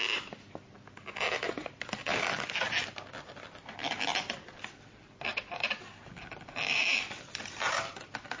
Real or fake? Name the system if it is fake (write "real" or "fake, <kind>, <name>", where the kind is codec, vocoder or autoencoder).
fake, vocoder, BigVGAN v2